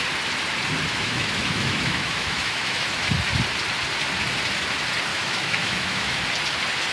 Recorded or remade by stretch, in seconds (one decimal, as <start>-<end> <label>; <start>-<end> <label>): 0.0-0.9 recorded; 0.9-3.1 remade; 3.1-5.1 recorded; 5.1-6.2 remade; 6.2-6.9 recorded